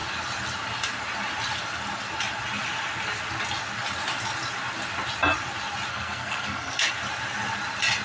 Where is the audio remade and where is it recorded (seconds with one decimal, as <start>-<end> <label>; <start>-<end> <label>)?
0.0-5.9 recorded; 5.9-6.9 remade; 6.9-8.0 recorded